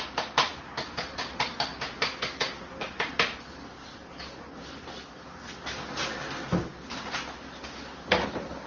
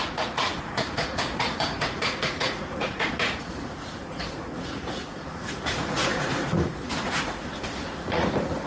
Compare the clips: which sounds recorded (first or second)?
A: first